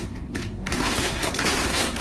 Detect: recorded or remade remade